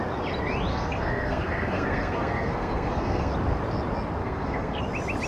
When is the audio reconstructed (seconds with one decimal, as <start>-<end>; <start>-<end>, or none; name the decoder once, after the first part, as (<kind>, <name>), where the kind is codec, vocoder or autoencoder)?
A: 0.7-3.3 (codec, SNAC); 4.2-4.8

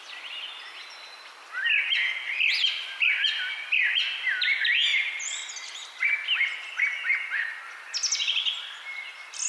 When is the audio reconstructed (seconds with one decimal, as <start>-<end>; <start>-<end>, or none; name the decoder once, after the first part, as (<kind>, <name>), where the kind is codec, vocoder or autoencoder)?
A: 4.9-5.7 (vocoder, BigVGAN v2)

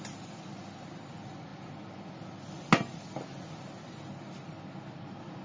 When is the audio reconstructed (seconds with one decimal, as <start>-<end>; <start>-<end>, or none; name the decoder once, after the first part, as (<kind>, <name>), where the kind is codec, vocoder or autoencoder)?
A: none

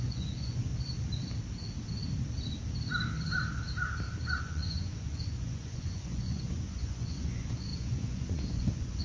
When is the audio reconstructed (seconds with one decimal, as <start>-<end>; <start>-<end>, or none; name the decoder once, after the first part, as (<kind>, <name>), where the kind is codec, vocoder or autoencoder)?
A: 0.0-0.7 (vocoder, Vocos); 4.4-9.0

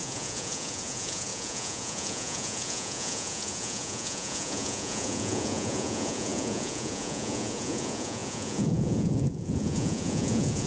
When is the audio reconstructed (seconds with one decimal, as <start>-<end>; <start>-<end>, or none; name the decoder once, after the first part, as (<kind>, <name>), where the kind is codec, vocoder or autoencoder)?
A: 0.0-10.7 (vocoder, Vocos)